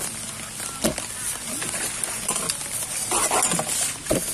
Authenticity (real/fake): real